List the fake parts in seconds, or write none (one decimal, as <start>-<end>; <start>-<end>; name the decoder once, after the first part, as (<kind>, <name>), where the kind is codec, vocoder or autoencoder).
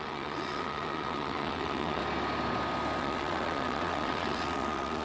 0.0-2.0 (vocoder, WaveNeXt); 3.0-5.0